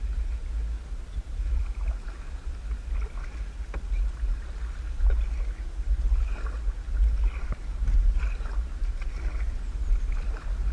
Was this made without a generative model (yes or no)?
yes